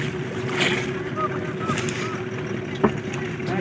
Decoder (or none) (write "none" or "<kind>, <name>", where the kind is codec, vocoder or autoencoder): none